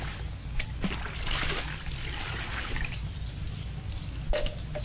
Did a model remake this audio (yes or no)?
no